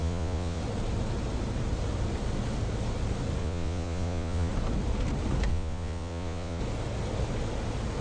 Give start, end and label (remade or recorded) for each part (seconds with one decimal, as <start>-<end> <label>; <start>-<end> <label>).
0.0-0.6 remade; 0.6-3.4 recorded; 3.4-4.5 remade; 4.5-5.5 recorded; 5.5-6.6 remade; 6.6-8.0 recorded